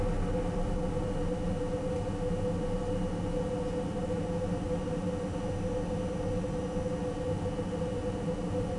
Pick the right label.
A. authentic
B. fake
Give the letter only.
A